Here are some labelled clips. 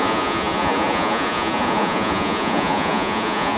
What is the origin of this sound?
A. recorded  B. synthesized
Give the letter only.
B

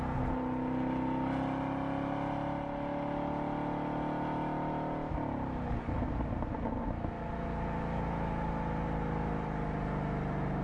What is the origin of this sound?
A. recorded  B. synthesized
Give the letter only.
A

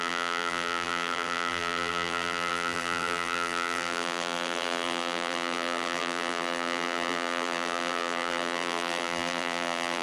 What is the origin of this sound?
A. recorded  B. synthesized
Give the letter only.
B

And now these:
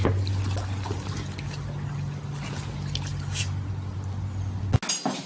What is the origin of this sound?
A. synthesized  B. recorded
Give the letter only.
B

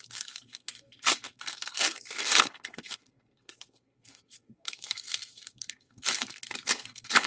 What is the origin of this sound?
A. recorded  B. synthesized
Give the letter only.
B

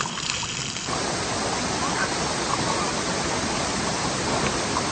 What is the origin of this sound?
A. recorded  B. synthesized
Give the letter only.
A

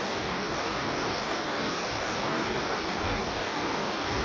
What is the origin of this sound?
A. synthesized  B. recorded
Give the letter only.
A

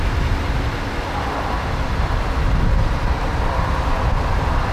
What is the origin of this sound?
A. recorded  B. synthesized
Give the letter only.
A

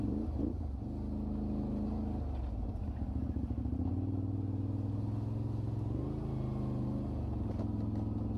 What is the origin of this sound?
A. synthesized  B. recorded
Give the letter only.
B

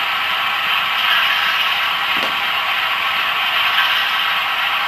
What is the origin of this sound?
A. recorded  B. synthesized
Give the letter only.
A